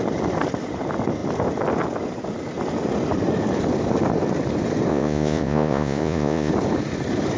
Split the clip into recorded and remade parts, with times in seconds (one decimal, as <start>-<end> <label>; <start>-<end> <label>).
0.0-4.9 recorded; 4.9-6.5 remade; 6.5-7.4 recorded